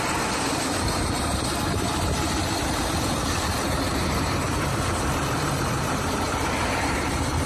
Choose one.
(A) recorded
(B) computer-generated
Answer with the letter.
B